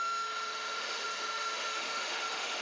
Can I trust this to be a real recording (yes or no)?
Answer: no